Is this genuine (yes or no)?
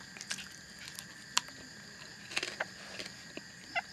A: yes